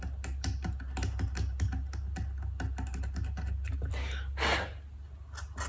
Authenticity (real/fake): real